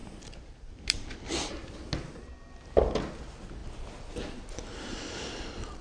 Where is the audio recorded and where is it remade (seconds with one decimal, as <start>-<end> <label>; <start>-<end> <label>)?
0.0-1.1 remade; 1.1-5.8 recorded